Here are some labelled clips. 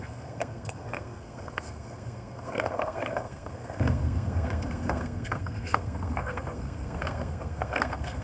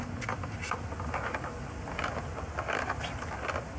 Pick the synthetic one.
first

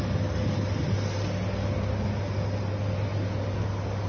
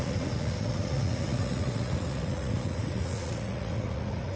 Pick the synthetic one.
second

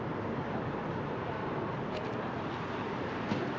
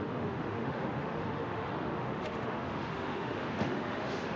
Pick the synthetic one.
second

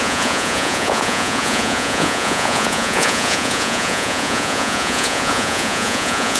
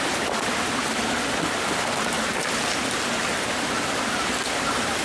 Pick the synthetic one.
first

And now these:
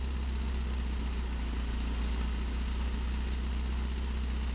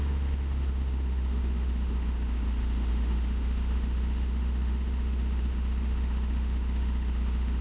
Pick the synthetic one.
second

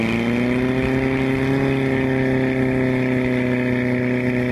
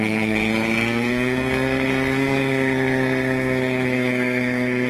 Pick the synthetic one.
second